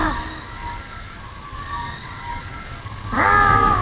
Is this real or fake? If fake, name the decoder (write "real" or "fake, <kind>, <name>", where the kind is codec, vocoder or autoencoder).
fake, codec, DAC